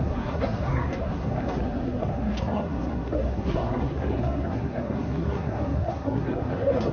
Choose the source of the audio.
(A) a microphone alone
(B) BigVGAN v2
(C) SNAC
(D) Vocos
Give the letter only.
C